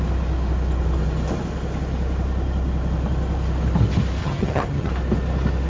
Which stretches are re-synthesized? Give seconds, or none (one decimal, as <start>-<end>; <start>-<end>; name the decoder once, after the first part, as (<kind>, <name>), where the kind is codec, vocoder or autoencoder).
4.2-4.9 (vocoder, HiFi-GAN)